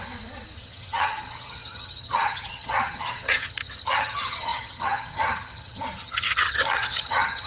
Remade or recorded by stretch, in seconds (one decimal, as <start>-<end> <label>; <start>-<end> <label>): 0.0-0.6 recorded; 0.6-7.5 remade